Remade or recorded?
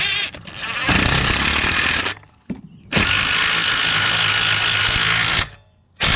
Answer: recorded